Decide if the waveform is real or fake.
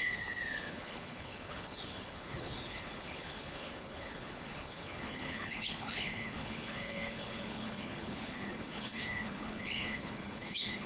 fake